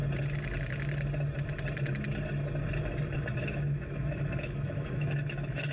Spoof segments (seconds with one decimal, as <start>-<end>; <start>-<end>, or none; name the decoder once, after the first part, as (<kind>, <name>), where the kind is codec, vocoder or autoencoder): 3.4-5.7 (autoencoder, DAC-VAE)